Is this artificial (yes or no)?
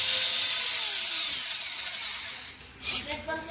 no